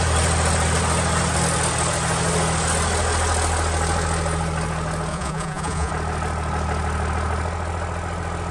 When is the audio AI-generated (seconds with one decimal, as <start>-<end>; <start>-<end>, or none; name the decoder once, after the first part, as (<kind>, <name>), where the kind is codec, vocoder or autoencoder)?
5.1-5.9 (vocoder, Vocos)